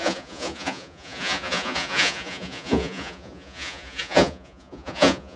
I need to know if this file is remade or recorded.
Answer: remade